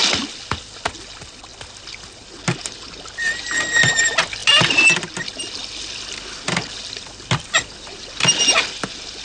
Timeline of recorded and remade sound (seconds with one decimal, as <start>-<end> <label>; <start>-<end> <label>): 0.0-9.2 recorded